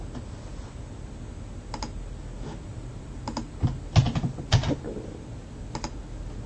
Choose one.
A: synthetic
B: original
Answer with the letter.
B